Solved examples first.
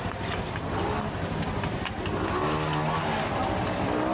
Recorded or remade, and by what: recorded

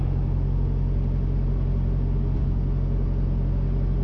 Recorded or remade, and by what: recorded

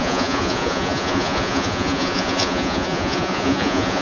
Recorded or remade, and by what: remade, vocoder, Vocos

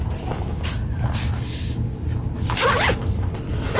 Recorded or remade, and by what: recorded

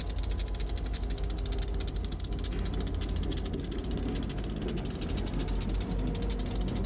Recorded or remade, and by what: recorded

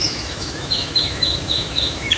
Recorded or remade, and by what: remade, autoencoder, DAC-VAE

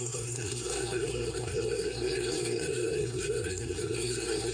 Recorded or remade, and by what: remade, codec, SNAC